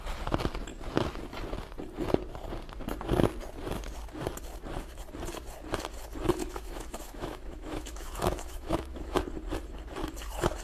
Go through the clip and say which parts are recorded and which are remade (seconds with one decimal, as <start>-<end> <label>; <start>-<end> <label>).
0.0-6.4 recorded; 6.4-9.2 remade; 9.2-10.6 recorded